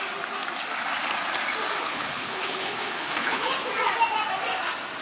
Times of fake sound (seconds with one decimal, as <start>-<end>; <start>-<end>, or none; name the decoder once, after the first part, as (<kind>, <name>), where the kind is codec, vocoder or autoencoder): 1.8-3.5 (codec, HILCodec)